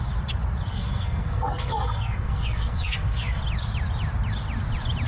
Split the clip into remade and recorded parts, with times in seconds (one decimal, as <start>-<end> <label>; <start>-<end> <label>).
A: 0.0-0.7 recorded; 0.7-3.4 remade; 3.4-5.1 recorded